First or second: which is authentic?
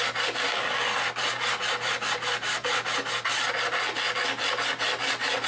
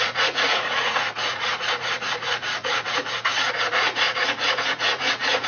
first